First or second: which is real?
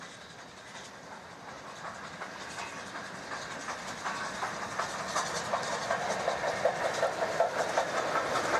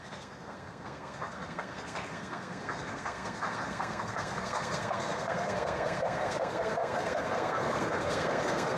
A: first